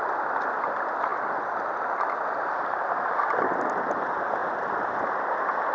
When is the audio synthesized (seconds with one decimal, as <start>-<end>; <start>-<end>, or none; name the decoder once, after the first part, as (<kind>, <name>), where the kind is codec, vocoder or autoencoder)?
none